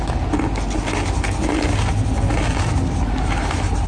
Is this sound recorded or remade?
recorded